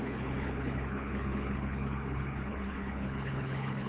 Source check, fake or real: fake